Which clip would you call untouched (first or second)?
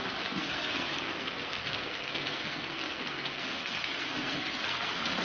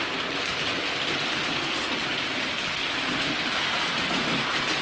second